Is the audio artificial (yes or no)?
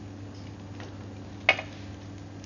no